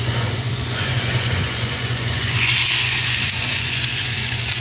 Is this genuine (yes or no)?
no